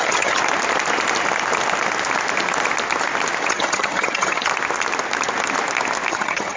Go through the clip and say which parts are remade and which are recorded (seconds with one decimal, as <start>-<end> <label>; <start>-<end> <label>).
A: 0.0-0.4 remade; 0.4-3.4 recorded; 3.4-4.5 remade; 4.5-6.1 recorded; 6.1-6.6 remade